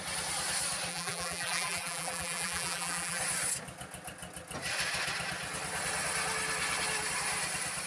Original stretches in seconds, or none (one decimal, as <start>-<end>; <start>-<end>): 0.0-0.9; 3.2-7.9